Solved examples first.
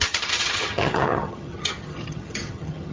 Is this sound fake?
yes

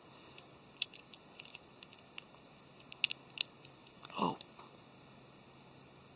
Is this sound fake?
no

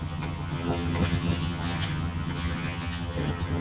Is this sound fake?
yes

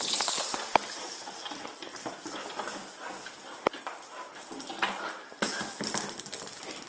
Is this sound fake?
no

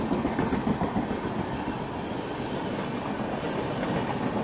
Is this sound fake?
no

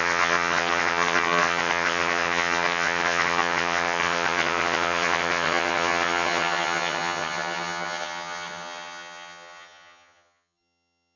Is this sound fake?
yes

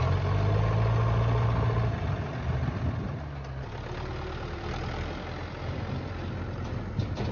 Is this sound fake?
no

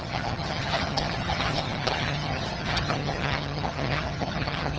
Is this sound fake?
yes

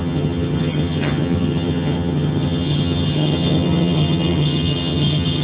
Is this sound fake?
yes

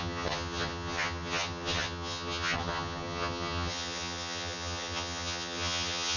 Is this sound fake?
yes